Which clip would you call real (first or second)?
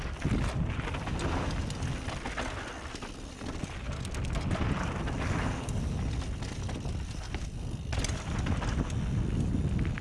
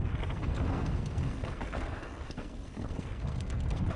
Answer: first